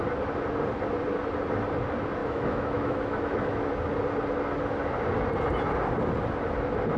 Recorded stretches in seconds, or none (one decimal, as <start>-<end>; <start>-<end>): 0.0-2.2; 3.7-7.0